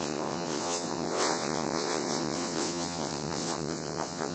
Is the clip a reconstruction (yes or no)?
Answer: yes